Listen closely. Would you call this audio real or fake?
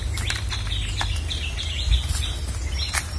real